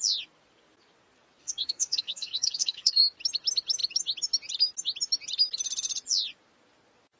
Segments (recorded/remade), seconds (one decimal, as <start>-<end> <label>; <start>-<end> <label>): 0.0-1.4 recorded; 1.4-3.0 remade; 3.0-7.2 recorded